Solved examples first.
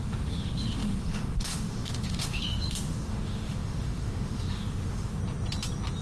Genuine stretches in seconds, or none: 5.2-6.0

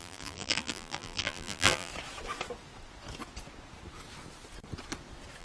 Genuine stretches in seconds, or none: 1.9-5.4